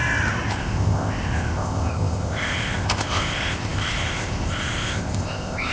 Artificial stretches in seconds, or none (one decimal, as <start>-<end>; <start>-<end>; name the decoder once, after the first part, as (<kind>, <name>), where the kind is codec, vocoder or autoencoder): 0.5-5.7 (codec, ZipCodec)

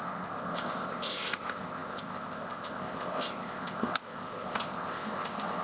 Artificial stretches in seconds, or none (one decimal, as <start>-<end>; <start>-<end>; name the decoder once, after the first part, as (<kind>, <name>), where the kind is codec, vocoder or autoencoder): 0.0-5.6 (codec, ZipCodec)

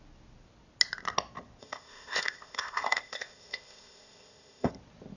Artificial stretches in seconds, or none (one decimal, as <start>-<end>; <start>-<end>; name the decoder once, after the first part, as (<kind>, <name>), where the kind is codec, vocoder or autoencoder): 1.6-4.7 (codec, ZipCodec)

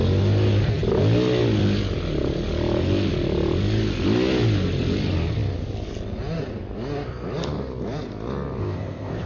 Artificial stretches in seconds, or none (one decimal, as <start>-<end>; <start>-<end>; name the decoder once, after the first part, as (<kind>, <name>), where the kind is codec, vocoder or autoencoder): 8.6-9.3 (codec, ZipCodec)

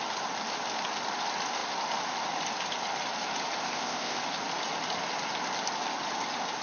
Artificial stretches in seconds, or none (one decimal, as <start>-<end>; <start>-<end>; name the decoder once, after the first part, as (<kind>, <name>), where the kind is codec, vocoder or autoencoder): 3.6-4.2 (codec, ZipCodec)

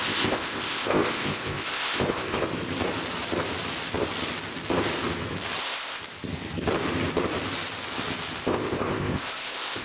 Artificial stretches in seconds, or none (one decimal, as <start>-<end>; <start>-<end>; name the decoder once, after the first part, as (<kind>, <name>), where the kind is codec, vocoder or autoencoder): 0.0-2.4 (codec, ZipCodec); 5.6-6.0; 8.4-9.8

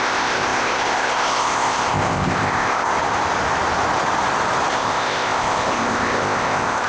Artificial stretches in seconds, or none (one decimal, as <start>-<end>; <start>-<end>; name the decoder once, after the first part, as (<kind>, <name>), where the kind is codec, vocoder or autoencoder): 0.0-2.9 (codec, ZipCodec); 4.7-6.9